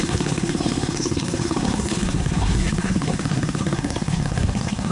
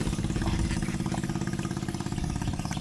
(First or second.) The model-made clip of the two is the first